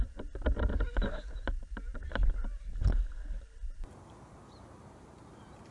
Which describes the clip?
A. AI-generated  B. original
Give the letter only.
A